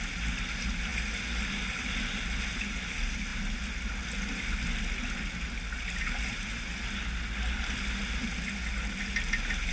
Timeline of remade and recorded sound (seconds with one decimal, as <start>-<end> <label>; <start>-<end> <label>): 0.0-9.7 recorded